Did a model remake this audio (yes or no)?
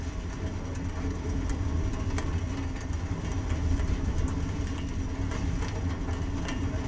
no